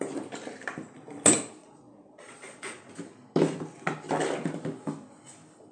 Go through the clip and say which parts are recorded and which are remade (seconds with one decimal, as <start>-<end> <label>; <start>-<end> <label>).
0.0-1.6 recorded; 1.6-2.9 remade; 2.9-5.7 recorded